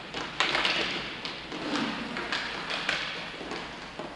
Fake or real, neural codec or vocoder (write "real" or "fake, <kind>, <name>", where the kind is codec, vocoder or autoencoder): real